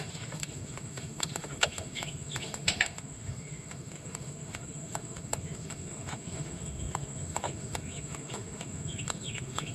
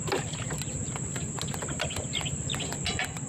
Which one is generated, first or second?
first